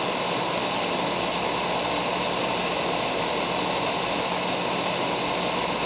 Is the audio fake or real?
real